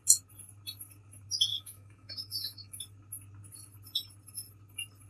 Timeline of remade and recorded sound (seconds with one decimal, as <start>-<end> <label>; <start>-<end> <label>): 0.0-1.5 recorded; 1.5-2.8 remade; 2.8-5.1 recorded